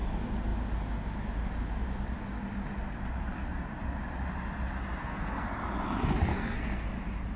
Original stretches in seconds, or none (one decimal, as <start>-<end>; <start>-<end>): 0.0-5.0; 5.5-6.3; 6.9-7.4